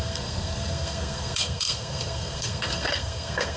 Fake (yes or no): yes